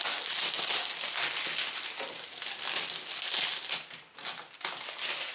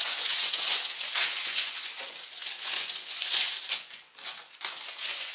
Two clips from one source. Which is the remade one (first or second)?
second